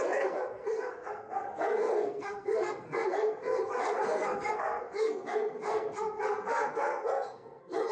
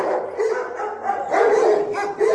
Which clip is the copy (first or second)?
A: first